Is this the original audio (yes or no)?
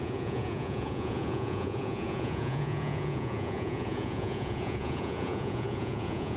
no